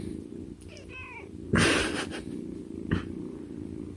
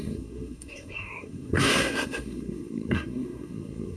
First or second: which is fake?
second